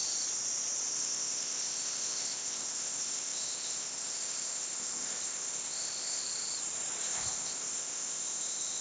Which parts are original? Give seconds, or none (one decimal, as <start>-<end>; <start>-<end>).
0.0-0.9; 6.2-7.0

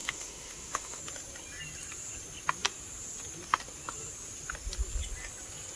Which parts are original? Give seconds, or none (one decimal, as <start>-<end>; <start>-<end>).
1.0-5.8